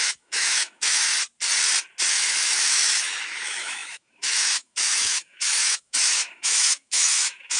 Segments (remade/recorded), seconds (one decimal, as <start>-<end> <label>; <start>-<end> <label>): 0.0-1.1 remade; 1.1-2.1 recorded; 2.1-7.6 remade